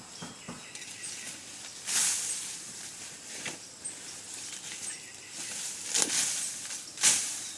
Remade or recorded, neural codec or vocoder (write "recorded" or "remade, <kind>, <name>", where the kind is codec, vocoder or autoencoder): recorded